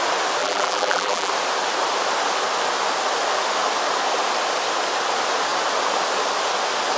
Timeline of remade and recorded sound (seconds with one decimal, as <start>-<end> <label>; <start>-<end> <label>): 0.0-0.4 recorded; 0.4-1.3 remade; 1.3-7.0 recorded